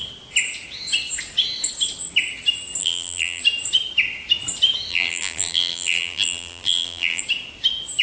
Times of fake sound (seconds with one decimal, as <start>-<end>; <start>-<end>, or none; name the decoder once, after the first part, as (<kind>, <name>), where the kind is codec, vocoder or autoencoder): 2.8-3.4 (vocoder, BigVGAN v2); 4.9-7.2